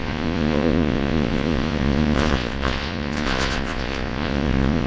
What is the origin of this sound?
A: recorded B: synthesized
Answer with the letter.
B